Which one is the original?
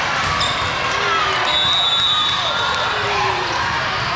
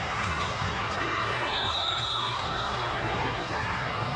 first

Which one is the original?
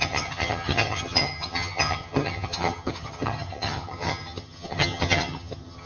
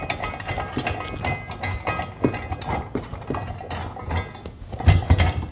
second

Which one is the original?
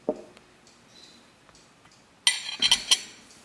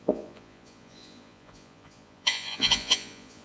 first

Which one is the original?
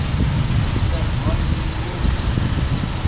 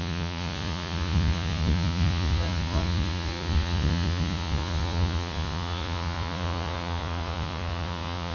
first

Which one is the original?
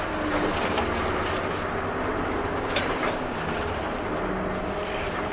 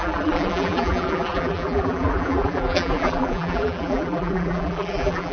first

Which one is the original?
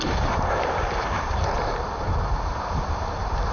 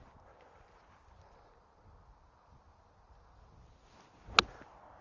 second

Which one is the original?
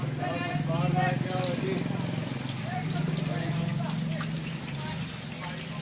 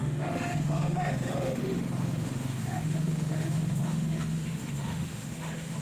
first